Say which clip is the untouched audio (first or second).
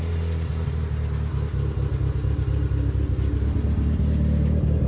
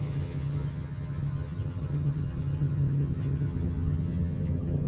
first